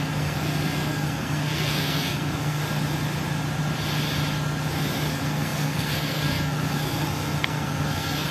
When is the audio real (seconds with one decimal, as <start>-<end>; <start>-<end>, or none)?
2.6-5.1